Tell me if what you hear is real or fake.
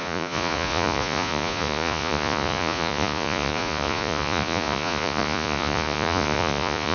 fake